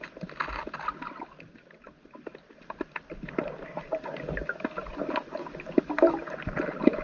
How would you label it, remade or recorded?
recorded